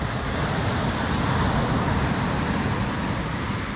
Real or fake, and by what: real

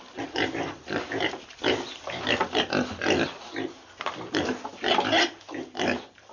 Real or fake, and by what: real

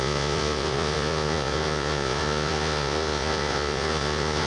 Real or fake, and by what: fake, vocoder, Vocos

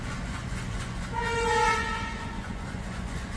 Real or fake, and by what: fake, vocoder, Vocos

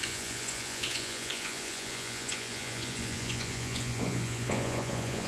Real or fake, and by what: fake, vocoder, Vocos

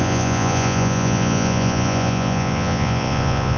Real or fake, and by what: fake, vocoder, Vocos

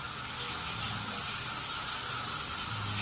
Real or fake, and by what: real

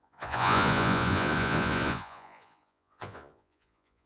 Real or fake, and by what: fake, vocoder, Vocos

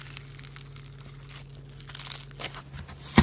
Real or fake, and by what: real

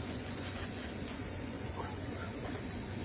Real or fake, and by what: fake, vocoder, Vocos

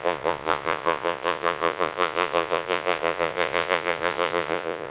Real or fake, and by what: fake, vocoder, Vocos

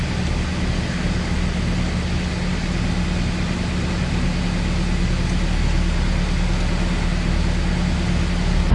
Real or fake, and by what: real